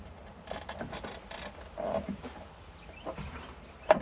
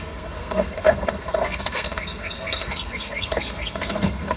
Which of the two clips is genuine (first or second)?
first